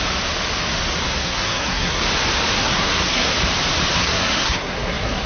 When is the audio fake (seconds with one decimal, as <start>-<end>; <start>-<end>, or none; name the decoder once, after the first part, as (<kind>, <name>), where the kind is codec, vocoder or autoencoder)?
1.0-2.0 (codec, SNAC); 2.6-3.3; 4.0-5.3